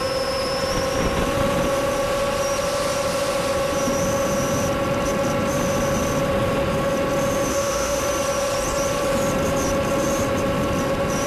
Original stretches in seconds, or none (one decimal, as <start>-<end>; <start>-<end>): 0.0-7.5; 8.0-11.3